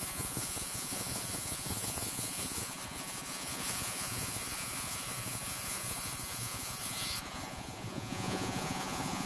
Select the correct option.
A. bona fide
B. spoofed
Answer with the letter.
B